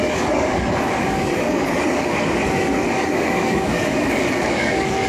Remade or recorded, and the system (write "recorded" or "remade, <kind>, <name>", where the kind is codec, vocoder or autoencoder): remade, codec, DAC